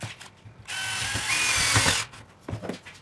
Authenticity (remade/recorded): recorded